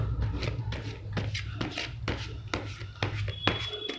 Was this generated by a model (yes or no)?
no